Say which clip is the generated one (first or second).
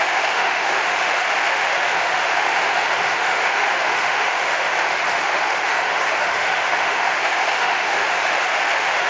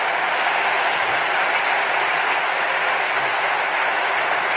first